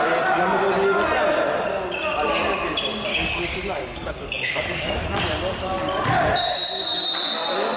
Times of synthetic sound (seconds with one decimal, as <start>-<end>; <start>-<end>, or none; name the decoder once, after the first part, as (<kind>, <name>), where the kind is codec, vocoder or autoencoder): 3.1-5.2 (codec, DAC)